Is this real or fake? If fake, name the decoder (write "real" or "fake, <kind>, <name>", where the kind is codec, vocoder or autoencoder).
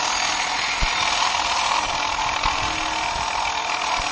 real